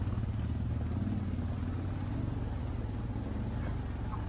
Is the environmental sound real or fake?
real